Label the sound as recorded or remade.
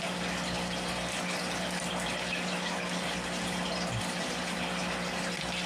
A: recorded